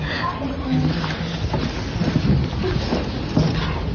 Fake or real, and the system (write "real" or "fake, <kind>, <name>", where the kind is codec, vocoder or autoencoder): real